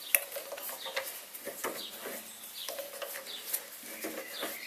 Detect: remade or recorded recorded